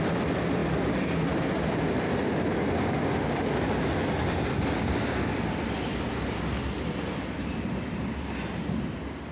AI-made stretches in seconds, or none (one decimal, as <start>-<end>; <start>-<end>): none